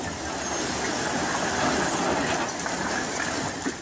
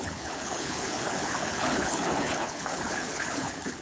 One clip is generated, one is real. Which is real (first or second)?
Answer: first